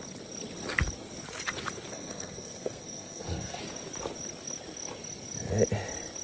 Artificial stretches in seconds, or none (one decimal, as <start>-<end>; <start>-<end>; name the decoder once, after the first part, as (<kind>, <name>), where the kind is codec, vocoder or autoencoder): 1.9-3.6 (codec, SNAC)